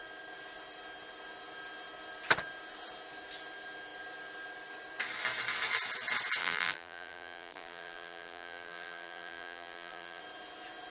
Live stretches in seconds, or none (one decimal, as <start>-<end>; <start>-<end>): 0.0-6.4; 10.2-10.9